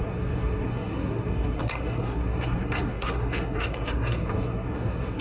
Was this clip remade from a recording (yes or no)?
yes